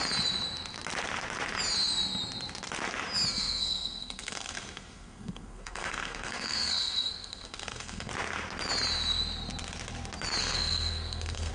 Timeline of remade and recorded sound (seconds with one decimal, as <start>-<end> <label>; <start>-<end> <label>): 0.0-3.3 recorded; 3.3-8.1 remade; 8.1-10.4 recorded; 10.4-11.5 remade